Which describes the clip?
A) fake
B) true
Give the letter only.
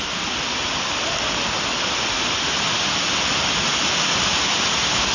B